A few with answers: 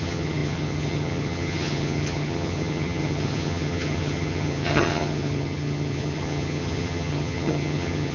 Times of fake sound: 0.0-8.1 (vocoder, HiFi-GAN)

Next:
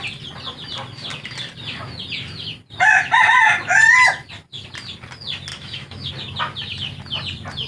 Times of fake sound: 5.5-6.1 (autoencoder, DAC-VAE)

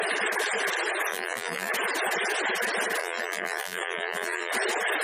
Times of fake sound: 1.1-1.7 (vocoder, BigVGAN v2); 3.0-4.5

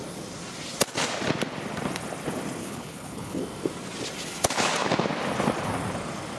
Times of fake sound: 2.6-3.4 (codec, HILCodec)

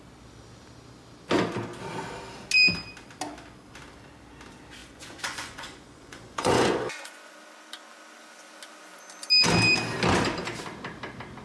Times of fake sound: 4.8-7.3 (vocoder, Vocos)

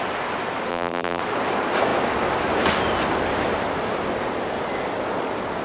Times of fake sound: 0.7-1.2 (vocoder, BigVGAN v2)

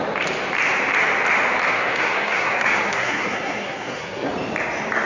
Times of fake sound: 1.7-4.3 (codec, SNAC)

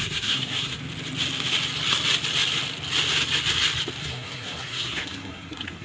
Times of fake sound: 0.0-0.8 (codec, SNAC); 4.0-5.8